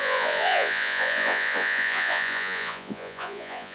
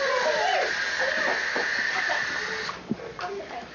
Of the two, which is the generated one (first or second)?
first